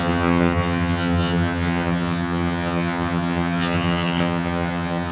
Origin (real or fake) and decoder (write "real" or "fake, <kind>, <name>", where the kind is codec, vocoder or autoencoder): fake, vocoder, HiFi-GAN